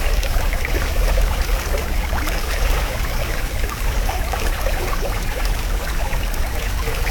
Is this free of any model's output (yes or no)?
no